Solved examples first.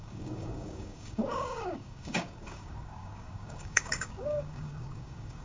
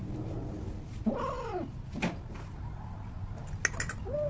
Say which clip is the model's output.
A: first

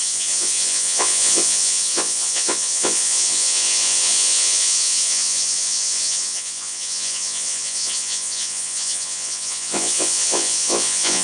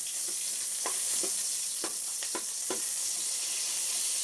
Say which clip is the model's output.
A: first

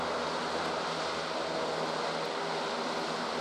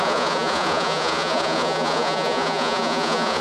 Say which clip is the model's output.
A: second